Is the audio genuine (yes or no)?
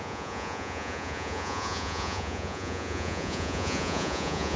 no